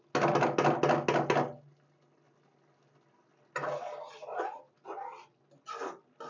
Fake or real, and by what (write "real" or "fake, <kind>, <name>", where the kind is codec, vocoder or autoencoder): real